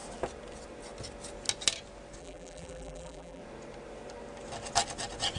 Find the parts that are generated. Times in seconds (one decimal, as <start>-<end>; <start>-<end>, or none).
2.2-3.4